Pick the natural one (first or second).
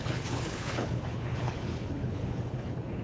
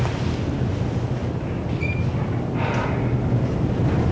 second